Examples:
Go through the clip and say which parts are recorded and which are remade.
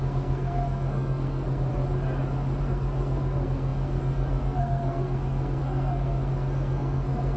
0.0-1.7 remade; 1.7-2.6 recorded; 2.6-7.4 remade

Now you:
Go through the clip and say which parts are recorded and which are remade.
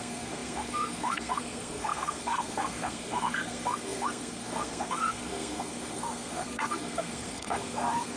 0.0-8.2 remade